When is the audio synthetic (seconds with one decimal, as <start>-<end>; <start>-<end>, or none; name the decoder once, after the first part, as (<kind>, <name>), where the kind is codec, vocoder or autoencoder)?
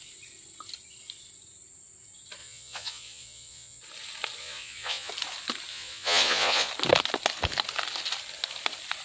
2.4-3.8 (vocoder, Vocos); 4.4-5.1; 5.7-6.7